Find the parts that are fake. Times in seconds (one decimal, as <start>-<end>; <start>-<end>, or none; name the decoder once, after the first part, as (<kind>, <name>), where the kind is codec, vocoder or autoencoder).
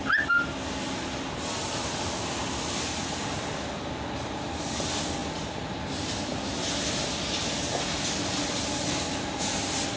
none